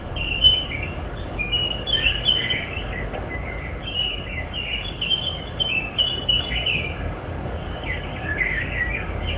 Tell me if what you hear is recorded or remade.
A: remade